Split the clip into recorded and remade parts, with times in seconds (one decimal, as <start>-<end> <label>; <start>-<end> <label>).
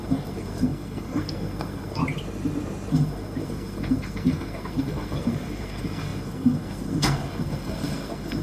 0.0-2.0 remade; 2.0-2.9 recorded; 2.9-8.4 remade